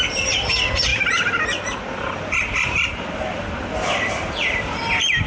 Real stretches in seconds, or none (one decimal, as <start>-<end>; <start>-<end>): 0.0-5.3